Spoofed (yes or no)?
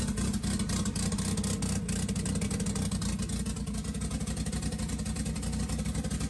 no